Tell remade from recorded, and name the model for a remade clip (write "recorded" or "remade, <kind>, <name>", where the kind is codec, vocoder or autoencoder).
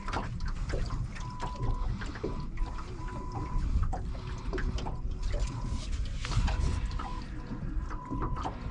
recorded